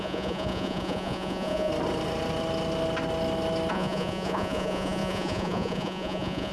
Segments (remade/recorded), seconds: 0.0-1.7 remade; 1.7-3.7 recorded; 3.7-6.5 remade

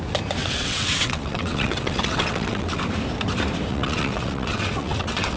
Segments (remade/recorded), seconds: 0.0-0.4 recorded; 0.4-2.8 remade; 2.8-3.7 recorded; 3.7-5.4 remade